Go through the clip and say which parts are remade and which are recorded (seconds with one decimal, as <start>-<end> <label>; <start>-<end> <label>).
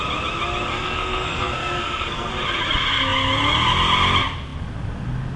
0.0-0.7 recorded; 0.7-2.3 remade; 2.3-5.4 recorded